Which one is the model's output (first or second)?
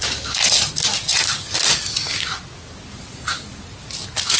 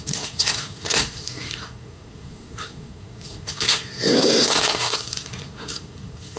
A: second